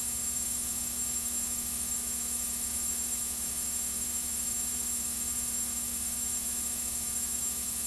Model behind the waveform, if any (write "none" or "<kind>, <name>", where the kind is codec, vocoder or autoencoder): autoencoder, DAC-VAE